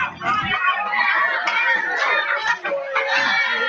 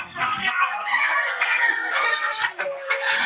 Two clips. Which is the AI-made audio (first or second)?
second